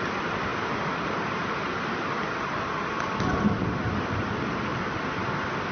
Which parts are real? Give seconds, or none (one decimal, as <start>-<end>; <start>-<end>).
0.0-4.7